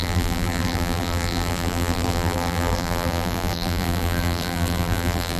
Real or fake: fake